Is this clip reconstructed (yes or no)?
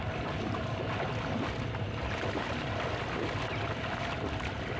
no